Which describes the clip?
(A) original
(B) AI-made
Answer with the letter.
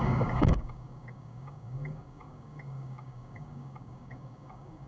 B